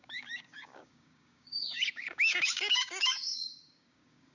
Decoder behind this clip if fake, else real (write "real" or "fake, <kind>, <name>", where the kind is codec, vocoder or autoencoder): fake, codec, DAC